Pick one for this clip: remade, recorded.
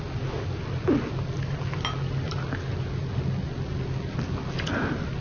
recorded